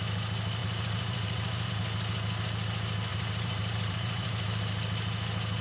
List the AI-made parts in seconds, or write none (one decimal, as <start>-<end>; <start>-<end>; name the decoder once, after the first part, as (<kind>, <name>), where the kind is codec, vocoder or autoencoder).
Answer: 0.6-1.7 (vocoder, BigVGAN v2); 3.1-4.6